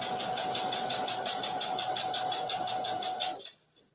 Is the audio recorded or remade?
recorded